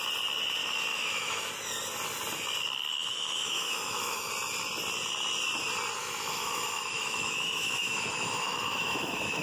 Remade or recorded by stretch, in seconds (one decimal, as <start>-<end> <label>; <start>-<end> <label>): 0.0-0.9 recorded; 0.9-1.5 remade; 1.5-2.9 recorded; 2.9-4.3 remade; 4.3-6.0 recorded; 6.0-9.4 remade